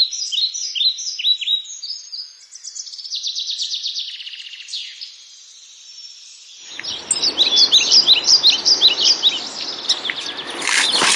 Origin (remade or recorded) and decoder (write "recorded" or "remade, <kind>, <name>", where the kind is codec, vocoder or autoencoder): recorded